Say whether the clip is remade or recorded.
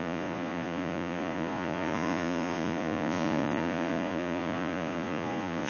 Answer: remade